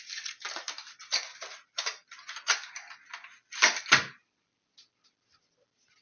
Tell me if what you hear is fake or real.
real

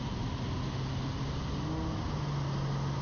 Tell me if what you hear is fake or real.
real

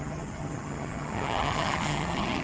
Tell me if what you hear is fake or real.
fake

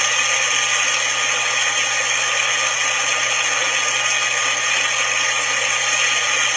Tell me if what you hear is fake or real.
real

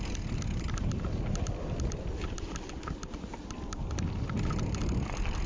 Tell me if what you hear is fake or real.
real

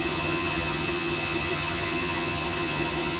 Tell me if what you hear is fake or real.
fake